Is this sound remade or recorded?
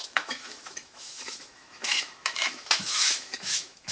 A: remade